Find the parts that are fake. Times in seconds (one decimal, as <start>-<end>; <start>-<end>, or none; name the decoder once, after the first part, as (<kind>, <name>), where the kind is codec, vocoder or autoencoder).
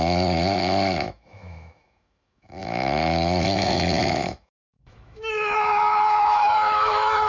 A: 0.0-7.3 (autoencoder, DAC-VAE)